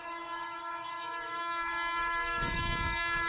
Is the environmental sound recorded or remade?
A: remade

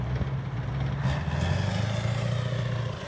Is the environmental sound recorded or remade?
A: recorded